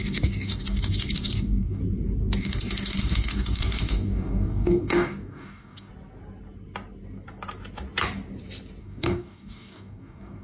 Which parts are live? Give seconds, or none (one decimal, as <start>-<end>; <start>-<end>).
1.8-2.4; 5.9-8.8